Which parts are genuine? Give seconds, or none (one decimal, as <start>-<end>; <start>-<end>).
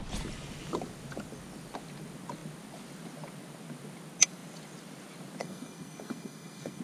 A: 0.0-5.4